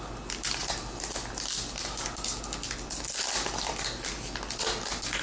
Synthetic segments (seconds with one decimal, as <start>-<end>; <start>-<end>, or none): none